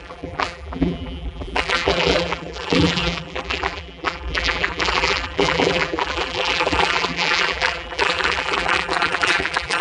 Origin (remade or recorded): remade